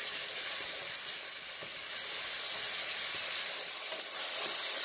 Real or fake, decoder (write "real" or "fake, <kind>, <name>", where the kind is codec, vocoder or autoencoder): real